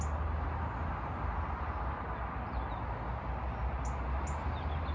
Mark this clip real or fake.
real